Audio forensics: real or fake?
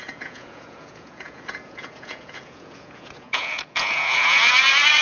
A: fake